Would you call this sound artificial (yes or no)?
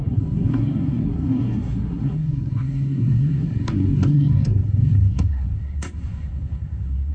yes